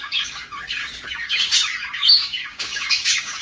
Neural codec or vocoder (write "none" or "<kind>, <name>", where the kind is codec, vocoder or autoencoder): codec, DAC